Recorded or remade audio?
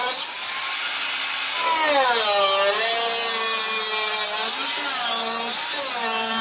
recorded